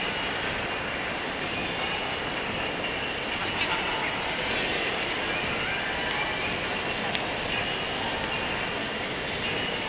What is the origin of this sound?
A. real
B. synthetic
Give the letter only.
A